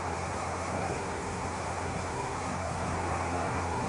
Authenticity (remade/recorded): remade